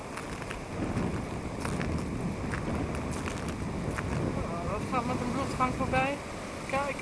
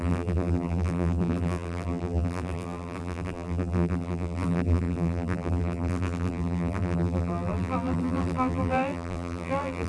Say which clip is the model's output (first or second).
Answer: second